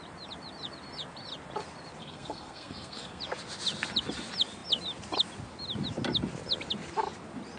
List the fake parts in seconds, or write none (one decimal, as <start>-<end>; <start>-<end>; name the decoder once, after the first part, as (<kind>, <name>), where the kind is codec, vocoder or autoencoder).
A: 2.0-3.2 (codec, SNAC)